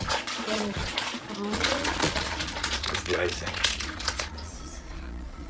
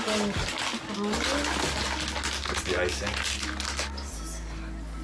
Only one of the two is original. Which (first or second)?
second